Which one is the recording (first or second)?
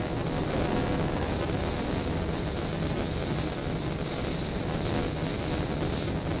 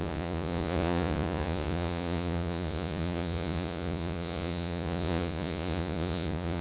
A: first